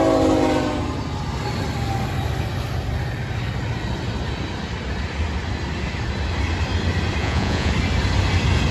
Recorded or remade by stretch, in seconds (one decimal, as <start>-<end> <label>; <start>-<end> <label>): 0.0-7.2 recorded; 7.2-7.7 remade; 7.7-8.7 recorded